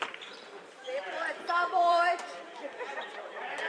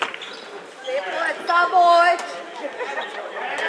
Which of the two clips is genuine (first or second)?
second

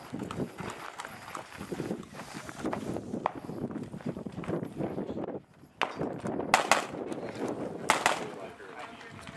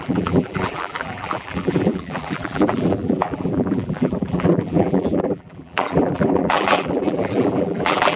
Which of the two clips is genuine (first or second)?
first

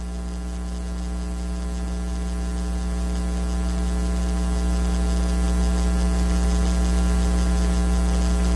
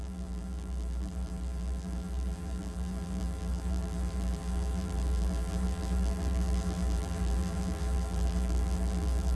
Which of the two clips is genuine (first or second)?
first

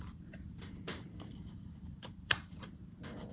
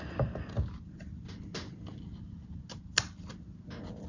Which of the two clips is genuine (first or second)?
second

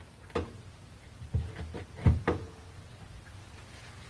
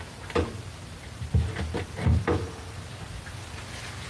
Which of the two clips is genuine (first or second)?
first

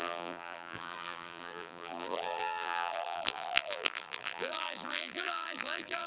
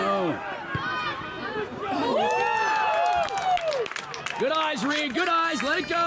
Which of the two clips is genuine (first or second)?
second